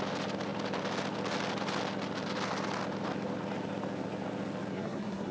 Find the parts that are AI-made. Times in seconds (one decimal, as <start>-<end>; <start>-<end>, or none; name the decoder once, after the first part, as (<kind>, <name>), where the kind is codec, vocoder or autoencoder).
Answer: 4.7-5.3 (codec, SNAC)